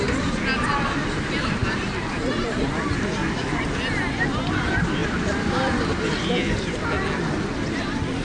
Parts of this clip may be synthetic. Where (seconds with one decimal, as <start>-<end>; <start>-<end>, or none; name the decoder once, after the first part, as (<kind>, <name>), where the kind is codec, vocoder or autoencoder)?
5.0-6.9 (vocoder, BigVGAN v2)